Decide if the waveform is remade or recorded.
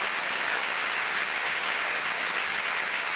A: remade